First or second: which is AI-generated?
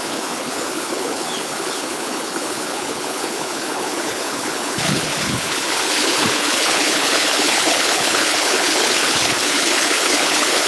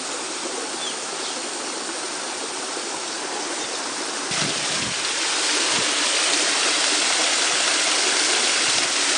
first